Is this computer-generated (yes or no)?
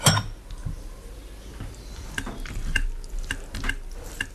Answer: no